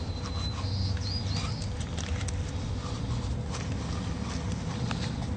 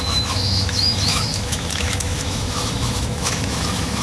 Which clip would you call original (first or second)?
first